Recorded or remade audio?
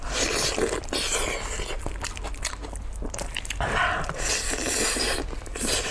recorded